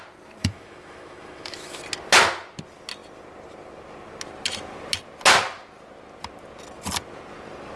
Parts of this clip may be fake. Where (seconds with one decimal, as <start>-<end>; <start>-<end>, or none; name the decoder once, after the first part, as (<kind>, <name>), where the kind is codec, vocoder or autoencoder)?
0.4-1.8 (autoencoder, DAC-VAE)